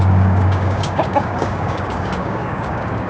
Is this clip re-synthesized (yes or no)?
yes